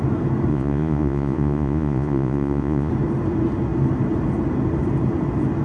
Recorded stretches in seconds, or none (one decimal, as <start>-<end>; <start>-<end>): 0.0-0.5; 2.9-5.6